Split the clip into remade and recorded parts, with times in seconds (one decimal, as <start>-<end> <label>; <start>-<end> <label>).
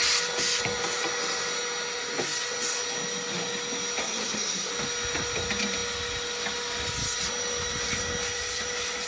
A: 0.0-4.0 recorded; 4.0-4.7 remade; 4.7-9.1 recorded